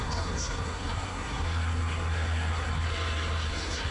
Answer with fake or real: fake